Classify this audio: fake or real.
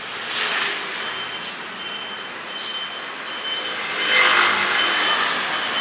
real